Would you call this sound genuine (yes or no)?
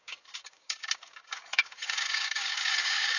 no